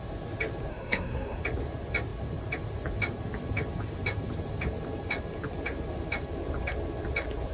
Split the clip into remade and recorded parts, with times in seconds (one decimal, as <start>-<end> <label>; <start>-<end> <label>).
0.0-0.7 recorded; 0.7-1.4 remade; 1.4-7.5 recorded

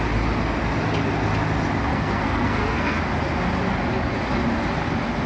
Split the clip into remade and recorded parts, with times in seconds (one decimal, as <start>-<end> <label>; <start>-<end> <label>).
0.0-1.9 recorded; 1.9-3.0 remade; 3.0-5.3 recorded

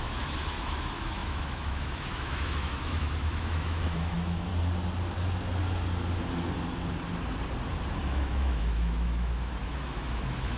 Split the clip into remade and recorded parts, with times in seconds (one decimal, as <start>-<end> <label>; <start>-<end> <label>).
0.0-4.5 remade; 4.5-8.0 recorded; 8.0-10.6 remade